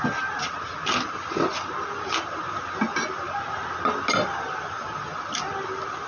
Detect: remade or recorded recorded